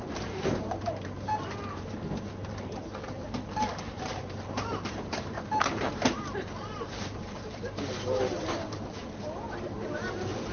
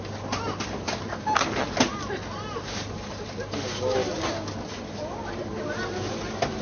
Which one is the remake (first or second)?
first